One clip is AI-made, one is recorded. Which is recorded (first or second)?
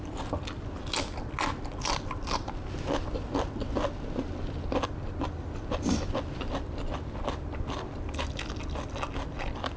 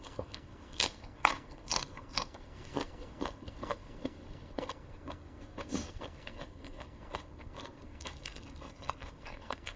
first